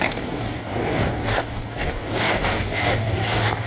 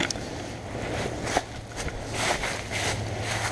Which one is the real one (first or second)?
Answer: second